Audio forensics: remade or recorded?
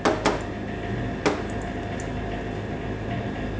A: recorded